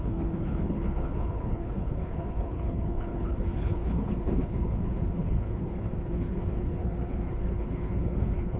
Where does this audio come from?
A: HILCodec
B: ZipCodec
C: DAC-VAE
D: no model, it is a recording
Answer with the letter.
A